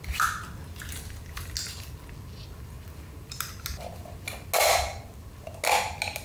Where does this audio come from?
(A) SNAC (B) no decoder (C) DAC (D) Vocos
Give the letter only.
B